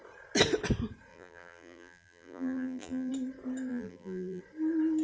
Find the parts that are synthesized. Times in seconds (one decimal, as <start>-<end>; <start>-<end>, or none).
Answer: 1.1-3.1; 3.7-4.4